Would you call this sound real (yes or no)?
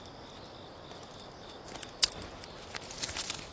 yes